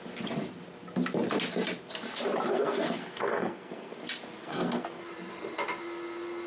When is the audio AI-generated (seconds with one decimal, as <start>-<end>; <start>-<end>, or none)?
2.5-4.0; 4.4-5.0

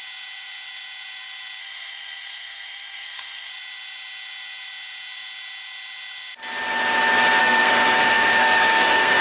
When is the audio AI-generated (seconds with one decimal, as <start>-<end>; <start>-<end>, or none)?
1.6-3.5; 7.4-9.2

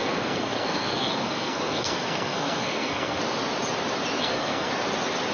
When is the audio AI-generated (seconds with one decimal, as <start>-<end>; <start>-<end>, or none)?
0.0-3.2; 4.2-4.7